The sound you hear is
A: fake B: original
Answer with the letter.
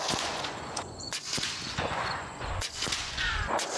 A